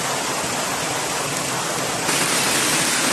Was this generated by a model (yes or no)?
no